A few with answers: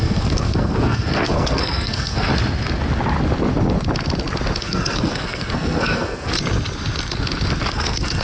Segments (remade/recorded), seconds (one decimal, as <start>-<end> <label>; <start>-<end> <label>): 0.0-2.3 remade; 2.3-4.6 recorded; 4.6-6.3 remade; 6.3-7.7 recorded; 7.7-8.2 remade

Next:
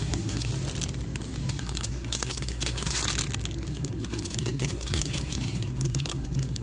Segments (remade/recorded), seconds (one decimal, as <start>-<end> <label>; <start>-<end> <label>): 0.0-0.5 remade; 0.5-1.5 recorded; 1.5-3.0 remade; 3.0-3.7 recorded; 3.7-6.6 remade

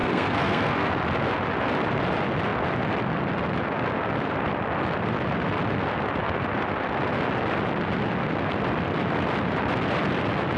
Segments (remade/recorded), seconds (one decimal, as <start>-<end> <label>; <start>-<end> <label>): 0.0-0.9 remade; 0.9-10.6 recorded

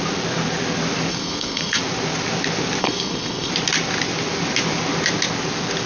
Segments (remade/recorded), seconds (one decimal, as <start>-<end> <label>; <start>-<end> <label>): 0.0-1.1 recorded; 1.1-1.8 remade; 1.8-2.8 recorded; 2.8-3.5 remade; 3.5-5.9 recorded

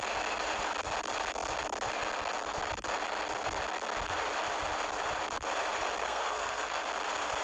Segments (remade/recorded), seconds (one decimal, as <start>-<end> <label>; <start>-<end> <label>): 0.0-6.0 recorded; 6.0-6.8 remade; 6.8-7.4 recorded

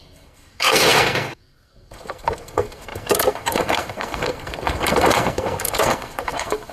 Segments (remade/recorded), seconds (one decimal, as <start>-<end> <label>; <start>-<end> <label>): 0.0-6.7 remade